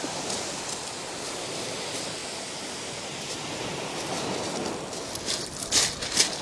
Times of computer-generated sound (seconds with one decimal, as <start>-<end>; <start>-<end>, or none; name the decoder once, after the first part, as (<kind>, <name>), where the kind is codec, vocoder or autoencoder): none